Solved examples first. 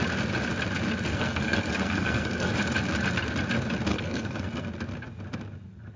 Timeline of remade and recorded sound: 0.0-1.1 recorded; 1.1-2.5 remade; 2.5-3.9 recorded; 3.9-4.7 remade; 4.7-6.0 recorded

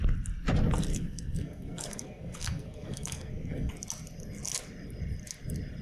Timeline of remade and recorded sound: 0.0-0.9 recorded; 0.9-3.7 remade; 3.7-5.8 recorded

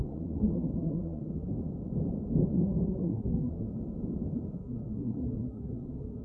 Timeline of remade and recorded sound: 0.0-1.6 remade; 1.6-2.5 recorded; 2.5-3.7 remade; 3.7-4.5 recorded; 4.5-6.2 remade

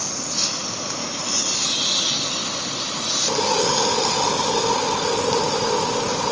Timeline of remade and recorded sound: 0.0-6.3 recorded

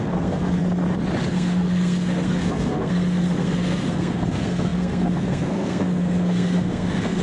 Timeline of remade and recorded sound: 0.0-0.6 remade; 0.6-1.3 recorded; 1.3-7.2 remade

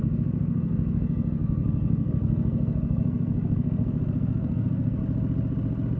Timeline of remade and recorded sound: 0.0-5.0 remade; 5.0-6.0 recorded

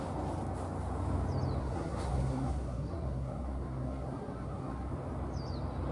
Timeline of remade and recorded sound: 0.0-1.6 recorded; 1.6-4.9 remade; 4.9-5.9 recorded